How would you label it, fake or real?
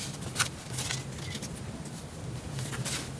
real